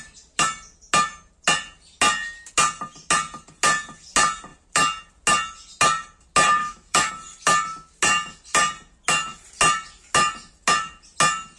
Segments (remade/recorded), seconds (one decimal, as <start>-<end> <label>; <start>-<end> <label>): 0.0-6.6 recorded; 6.6-7.1 remade; 7.1-11.6 recorded